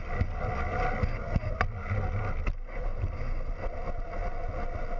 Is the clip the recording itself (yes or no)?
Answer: yes